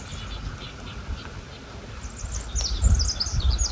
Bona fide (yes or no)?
yes